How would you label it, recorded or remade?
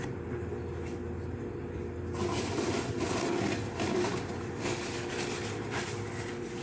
recorded